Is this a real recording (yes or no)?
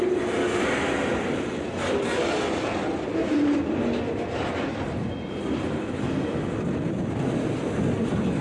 yes